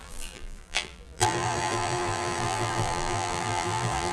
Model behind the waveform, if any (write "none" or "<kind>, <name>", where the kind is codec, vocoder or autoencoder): vocoder, BigVGAN v2